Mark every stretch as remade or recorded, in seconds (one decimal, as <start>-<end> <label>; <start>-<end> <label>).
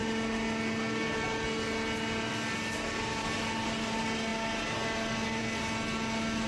0.0-6.5 recorded